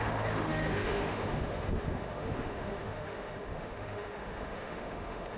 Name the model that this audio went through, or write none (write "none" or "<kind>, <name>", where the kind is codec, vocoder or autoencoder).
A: autoencoder, DAC-VAE